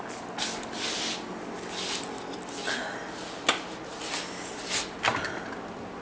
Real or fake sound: real